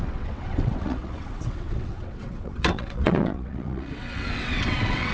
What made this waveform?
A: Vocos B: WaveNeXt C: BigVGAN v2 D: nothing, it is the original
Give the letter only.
B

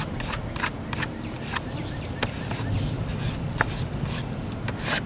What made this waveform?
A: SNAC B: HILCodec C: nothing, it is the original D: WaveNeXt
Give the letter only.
C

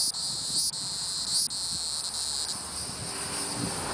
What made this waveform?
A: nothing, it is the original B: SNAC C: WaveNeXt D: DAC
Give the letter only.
A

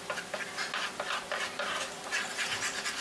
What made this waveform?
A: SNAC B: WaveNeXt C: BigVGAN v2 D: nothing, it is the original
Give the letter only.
D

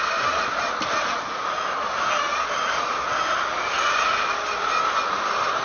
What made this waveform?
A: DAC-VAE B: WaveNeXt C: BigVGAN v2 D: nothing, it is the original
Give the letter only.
D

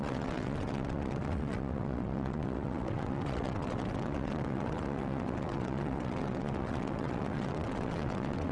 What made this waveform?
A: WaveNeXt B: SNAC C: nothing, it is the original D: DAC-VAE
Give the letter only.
A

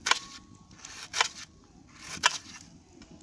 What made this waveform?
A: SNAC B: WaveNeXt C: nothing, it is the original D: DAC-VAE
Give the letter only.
C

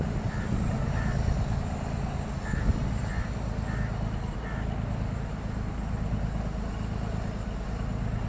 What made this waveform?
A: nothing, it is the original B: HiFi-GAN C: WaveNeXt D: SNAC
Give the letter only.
A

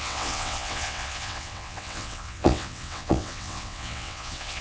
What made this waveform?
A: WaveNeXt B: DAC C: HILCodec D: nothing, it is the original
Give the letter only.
A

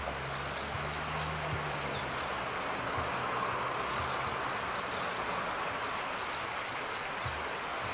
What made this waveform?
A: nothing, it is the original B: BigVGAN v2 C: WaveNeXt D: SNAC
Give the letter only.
A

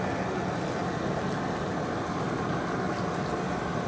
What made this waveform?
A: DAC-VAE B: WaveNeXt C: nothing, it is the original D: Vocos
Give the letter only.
C